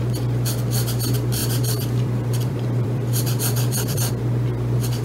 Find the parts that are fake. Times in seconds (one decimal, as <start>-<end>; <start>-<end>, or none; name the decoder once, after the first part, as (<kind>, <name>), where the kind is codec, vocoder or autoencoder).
1.4-4.1 (vocoder, BigVGAN v2)

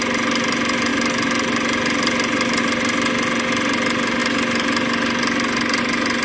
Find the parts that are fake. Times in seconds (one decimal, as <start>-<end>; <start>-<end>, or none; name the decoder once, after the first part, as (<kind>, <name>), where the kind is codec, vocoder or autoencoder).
none